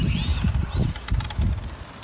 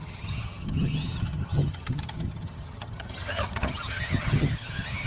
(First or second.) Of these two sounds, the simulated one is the second